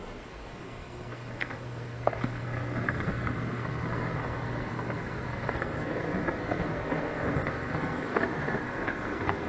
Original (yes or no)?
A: no